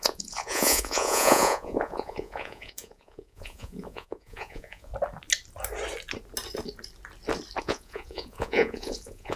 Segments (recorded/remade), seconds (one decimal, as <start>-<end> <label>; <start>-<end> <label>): 0.0-4.9 remade; 4.9-7.6 recorded; 7.6-9.4 remade